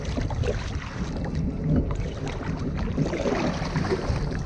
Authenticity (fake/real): real